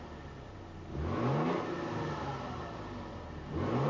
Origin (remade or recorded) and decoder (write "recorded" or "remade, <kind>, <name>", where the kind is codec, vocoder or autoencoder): recorded